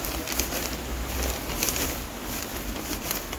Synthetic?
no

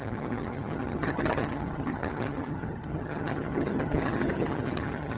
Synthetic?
yes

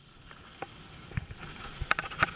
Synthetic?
no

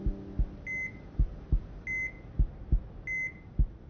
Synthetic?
no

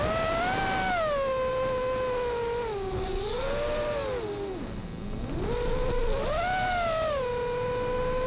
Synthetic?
no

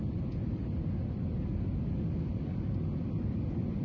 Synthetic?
no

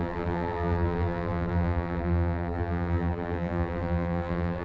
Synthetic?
yes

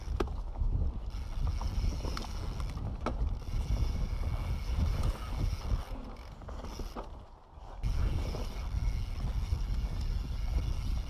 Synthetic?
no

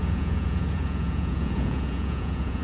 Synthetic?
yes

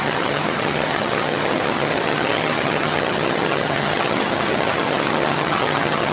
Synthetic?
yes